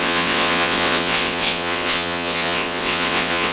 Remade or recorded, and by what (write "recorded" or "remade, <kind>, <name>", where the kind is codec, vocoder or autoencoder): remade, vocoder, WaveNeXt